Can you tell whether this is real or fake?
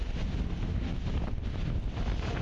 real